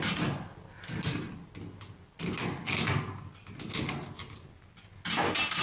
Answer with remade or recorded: recorded